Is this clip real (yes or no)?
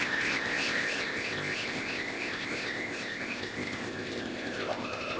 no